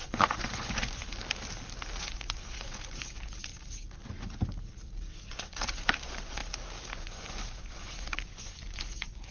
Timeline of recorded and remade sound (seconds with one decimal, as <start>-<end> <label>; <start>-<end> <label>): 0.0-1.0 remade; 1.0-2.0 recorded; 2.0-3.5 remade; 3.5-5.3 recorded; 5.3-6.4 remade; 6.4-6.9 recorded; 6.9-9.3 remade